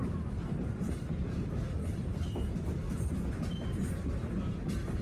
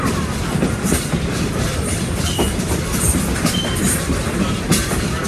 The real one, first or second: first